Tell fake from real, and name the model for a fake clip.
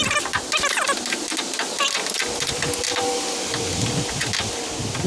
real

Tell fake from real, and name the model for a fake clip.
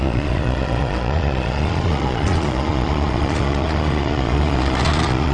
fake, vocoder, Vocos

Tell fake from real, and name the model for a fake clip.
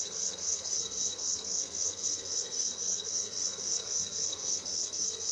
fake, codec, SNAC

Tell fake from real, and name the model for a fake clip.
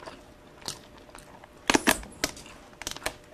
real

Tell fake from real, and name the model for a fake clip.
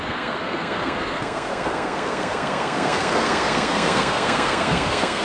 fake, codec, SNAC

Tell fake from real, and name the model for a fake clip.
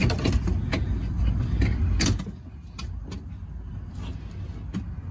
real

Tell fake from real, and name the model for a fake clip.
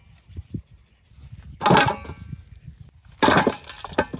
real